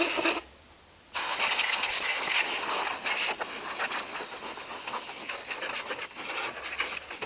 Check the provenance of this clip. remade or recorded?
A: recorded